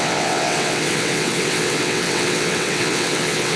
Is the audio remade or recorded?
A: remade